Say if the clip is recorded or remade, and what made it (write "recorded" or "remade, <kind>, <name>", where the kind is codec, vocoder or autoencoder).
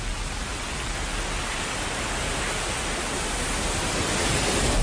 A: recorded